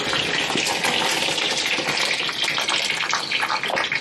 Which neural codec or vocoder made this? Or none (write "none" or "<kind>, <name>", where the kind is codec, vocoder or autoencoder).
none